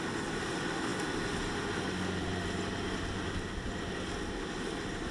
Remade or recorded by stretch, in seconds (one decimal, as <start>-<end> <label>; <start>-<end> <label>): 0.0-5.1 recorded